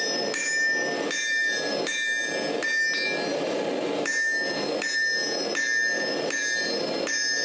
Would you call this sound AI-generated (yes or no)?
no